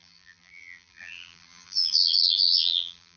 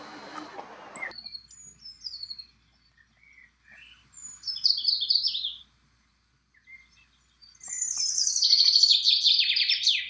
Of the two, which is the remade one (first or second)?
first